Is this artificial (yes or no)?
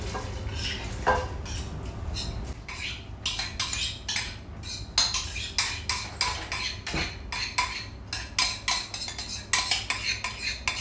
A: no